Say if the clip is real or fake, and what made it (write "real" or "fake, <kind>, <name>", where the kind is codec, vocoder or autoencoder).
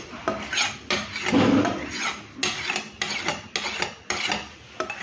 real